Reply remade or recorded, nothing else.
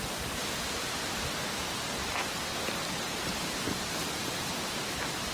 recorded